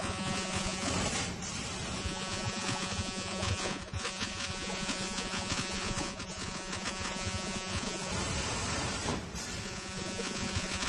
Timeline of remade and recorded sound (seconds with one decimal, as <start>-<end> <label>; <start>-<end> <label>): 0.0-0.9 remade; 0.9-2.0 recorded; 2.0-8.1 remade; 8.1-9.6 recorded; 9.6-10.9 remade